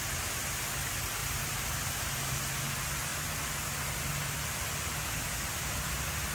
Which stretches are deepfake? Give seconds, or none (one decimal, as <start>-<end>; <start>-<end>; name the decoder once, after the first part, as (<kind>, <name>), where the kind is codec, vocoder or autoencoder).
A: 1.2-2.4 (vocoder, BigVGAN v2)